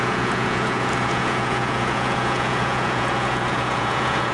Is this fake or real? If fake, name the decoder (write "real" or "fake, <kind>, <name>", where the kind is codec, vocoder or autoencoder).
fake, vocoder, Vocos